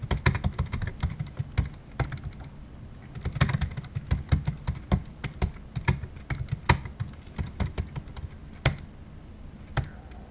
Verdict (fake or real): real